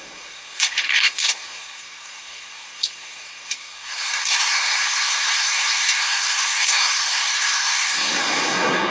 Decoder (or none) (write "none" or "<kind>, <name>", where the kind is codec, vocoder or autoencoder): codec, SNAC